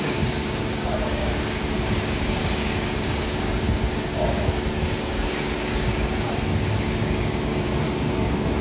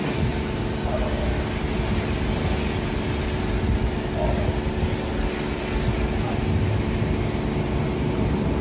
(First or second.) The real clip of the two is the second